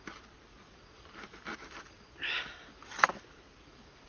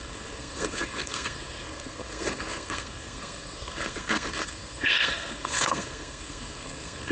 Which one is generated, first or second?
second